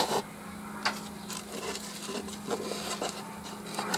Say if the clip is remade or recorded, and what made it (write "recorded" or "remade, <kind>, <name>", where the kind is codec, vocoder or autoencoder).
recorded